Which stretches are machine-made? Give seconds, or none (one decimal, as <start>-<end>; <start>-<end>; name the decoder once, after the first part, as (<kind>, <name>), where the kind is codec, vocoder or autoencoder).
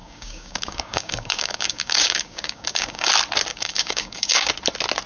0.0-3.1 (codec, DAC); 3.5-4.5